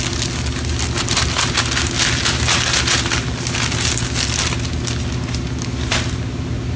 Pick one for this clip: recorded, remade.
recorded